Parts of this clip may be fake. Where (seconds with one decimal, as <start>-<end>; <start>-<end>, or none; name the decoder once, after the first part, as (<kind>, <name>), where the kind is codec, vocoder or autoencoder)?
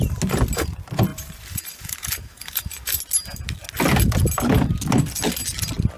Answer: 1.1-3.0 (vocoder, BigVGAN v2)